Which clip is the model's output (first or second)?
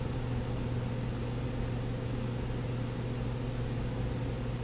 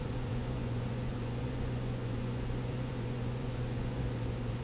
second